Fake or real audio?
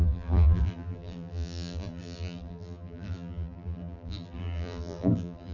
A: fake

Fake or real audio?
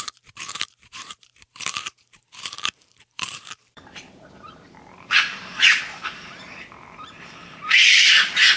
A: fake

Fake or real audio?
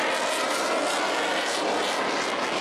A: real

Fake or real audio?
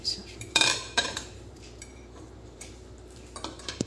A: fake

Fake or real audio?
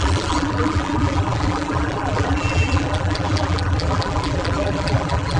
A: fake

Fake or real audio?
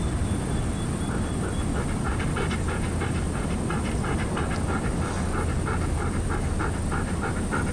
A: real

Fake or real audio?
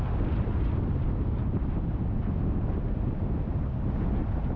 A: real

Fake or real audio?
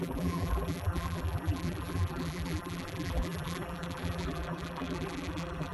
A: fake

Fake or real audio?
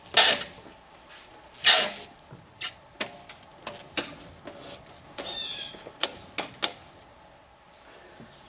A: real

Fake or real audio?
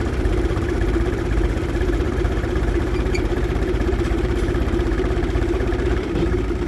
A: fake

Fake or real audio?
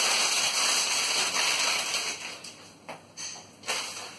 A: real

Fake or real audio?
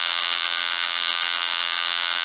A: fake